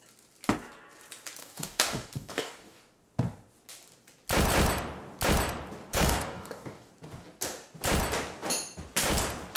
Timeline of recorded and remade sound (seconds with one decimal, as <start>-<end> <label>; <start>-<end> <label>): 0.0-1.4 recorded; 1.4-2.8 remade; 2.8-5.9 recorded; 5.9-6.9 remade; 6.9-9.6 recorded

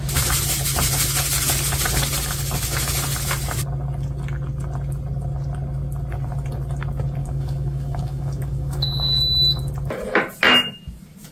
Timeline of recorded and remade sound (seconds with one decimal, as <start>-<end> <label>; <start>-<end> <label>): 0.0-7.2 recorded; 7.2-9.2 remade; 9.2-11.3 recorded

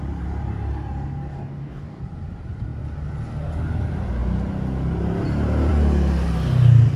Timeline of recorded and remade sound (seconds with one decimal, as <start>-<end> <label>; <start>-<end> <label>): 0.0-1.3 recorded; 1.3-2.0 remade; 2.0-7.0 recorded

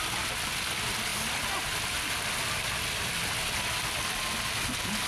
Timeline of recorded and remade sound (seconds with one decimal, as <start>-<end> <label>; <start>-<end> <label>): 0.0-5.1 recorded

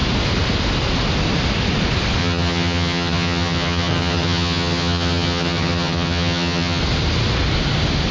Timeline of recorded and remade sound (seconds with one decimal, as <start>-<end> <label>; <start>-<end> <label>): 0.0-2.2 recorded; 2.2-6.8 remade; 6.8-8.1 recorded

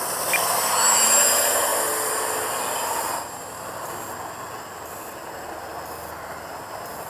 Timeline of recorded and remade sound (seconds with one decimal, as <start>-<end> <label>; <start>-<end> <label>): 0.0-7.1 recorded